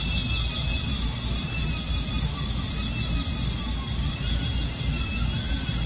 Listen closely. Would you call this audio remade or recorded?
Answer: recorded